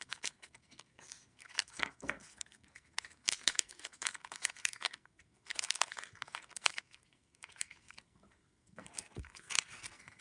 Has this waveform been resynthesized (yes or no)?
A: yes